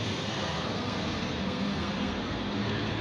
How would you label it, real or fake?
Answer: fake